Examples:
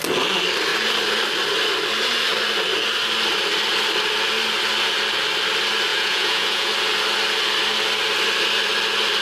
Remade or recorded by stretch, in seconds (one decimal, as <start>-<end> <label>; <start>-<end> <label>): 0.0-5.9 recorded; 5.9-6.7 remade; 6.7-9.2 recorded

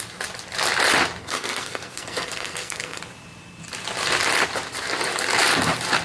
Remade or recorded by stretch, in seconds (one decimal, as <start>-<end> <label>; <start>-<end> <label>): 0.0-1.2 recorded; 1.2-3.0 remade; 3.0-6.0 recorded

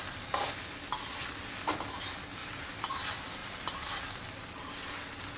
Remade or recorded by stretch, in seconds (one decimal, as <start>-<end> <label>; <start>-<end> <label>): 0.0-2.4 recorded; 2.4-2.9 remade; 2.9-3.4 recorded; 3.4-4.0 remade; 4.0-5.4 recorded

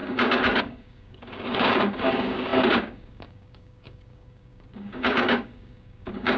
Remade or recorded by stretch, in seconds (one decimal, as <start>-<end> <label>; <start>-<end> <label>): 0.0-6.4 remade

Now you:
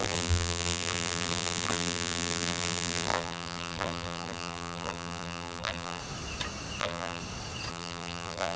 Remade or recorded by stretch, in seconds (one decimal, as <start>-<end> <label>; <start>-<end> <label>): 0.0-6.0 remade; 6.0-6.8 recorded; 6.8-7.2 remade; 7.2-7.7 recorded; 7.7-8.6 remade

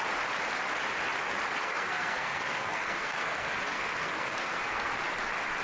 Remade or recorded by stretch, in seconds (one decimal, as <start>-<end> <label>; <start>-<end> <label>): 0.0-1.6 recorded; 1.6-5.0 remade; 5.0-5.6 recorded

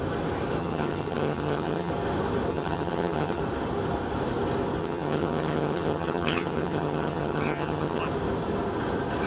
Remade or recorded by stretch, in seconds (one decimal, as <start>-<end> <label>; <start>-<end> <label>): 0.0-0.6 recorded; 0.6-1.9 remade; 1.9-2.5 recorded; 2.5-3.4 remade; 3.4-4.8 recorded; 4.8-8.0 remade; 8.0-9.3 recorded

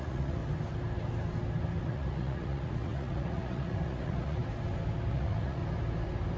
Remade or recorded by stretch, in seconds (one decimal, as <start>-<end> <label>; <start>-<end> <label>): 0.0-0.4 remade; 0.4-1.8 recorded; 1.8-4.4 remade; 4.4-5.1 recorded; 5.1-5.6 remade; 5.6-6.4 recorded